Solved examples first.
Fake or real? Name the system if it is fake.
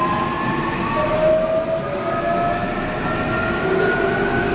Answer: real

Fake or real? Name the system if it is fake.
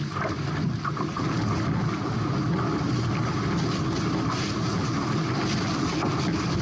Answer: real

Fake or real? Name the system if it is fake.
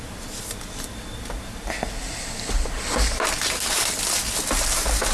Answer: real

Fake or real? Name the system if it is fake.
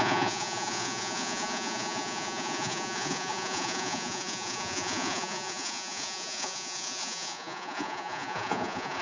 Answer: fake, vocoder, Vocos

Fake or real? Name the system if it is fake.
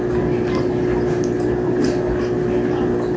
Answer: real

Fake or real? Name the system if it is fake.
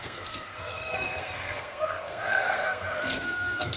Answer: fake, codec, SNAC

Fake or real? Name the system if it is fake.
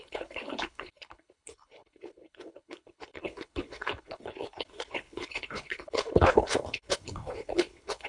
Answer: fake, codec, HILCodec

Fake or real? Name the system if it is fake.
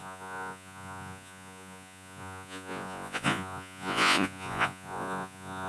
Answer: fake, vocoder, Vocos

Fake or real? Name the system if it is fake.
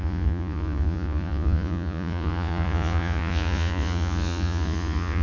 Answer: fake, vocoder, Vocos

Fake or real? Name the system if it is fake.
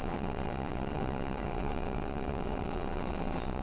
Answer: fake, vocoder, WaveNeXt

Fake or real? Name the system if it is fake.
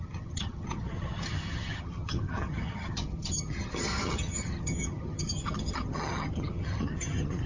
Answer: fake, vocoder, HiFi-GAN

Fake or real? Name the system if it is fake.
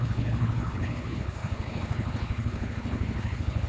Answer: fake, codec, HILCodec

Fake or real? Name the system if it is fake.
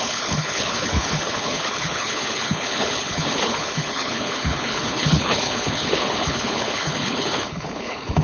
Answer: fake, codec, HILCodec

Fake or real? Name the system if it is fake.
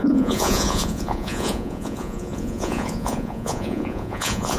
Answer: fake, vocoder, Vocos